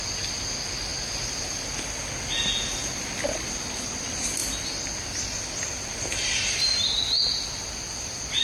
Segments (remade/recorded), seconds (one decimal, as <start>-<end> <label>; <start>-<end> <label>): 0.0-8.4 recorded